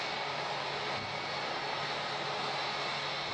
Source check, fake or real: real